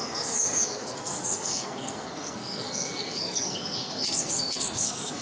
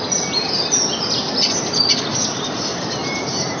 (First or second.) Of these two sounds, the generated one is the first